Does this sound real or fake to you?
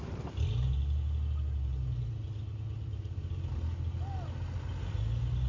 real